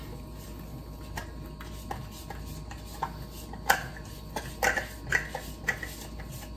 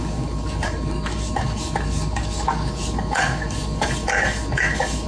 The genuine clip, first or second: first